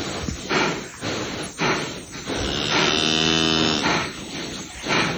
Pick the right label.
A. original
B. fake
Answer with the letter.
A